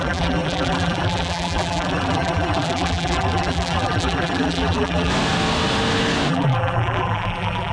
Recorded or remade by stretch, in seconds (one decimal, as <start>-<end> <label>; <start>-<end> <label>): 0.0-5.1 remade; 5.1-6.3 recorded; 6.3-7.7 remade